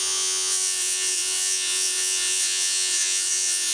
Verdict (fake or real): fake